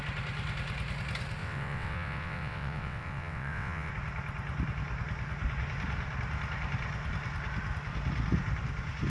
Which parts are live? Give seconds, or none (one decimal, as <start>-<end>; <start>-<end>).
0.0-1.4; 3.9-9.1